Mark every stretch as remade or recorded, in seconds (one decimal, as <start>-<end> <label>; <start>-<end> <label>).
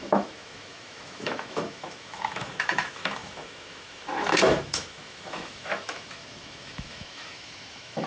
0.0-8.1 remade